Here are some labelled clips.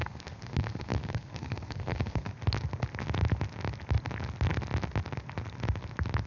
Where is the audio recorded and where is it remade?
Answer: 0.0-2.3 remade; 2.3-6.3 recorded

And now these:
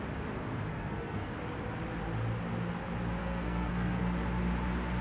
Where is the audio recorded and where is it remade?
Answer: 0.0-0.7 recorded; 0.7-1.3 remade; 1.3-3.2 recorded; 3.2-4.0 remade; 4.0-5.0 recorded